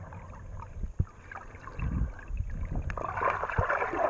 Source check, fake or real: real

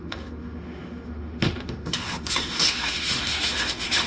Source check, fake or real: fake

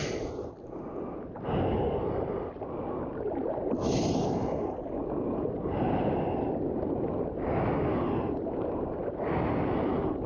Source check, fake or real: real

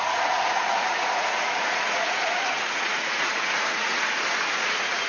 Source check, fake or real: fake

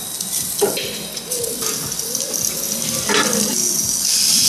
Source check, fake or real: real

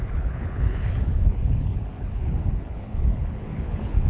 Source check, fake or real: fake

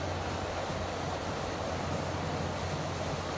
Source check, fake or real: real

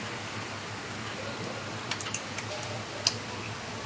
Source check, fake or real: real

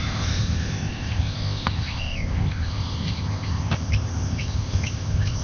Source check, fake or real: fake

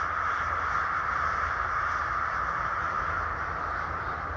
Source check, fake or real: fake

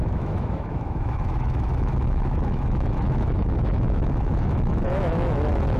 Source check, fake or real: fake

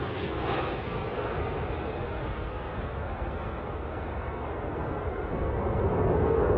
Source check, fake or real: fake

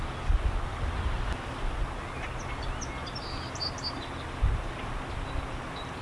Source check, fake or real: real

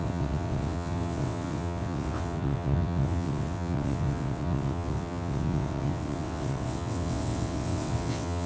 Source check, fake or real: fake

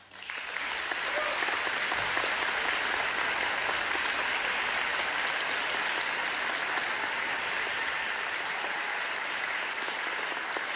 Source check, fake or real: real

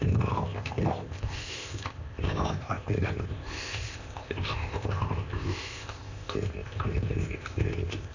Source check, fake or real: fake